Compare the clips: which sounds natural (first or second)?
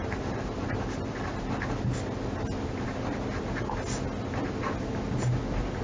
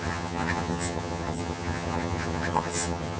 first